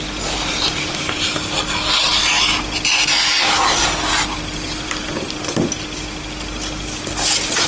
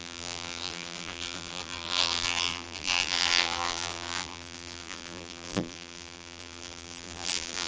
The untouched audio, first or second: first